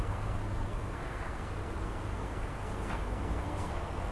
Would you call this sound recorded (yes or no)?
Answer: no